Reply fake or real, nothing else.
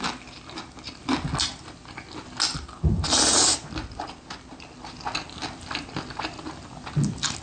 real